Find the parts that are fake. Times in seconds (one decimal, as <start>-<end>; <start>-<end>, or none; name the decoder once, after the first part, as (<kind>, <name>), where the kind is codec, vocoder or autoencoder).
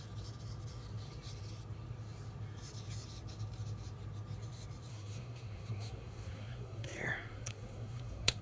4.9-8.4 (codec, SNAC)